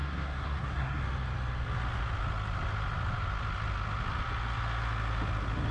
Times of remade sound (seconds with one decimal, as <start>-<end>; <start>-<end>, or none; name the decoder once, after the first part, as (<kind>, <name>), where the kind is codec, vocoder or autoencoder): 0.0-1.0 (codec, SNAC)